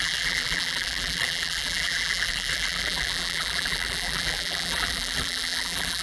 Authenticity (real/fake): fake